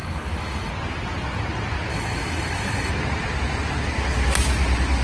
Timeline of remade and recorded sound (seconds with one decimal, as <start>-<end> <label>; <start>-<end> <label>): 0.0-0.7 remade; 0.7-1.9 recorded; 1.9-2.9 remade; 2.9-5.0 recorded